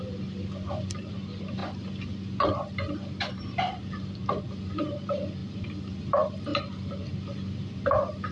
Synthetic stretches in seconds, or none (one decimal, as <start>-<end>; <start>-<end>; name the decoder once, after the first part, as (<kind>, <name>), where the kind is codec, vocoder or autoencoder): none